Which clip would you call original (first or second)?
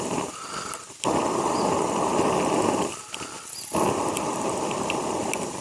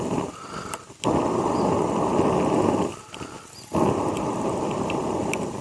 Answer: second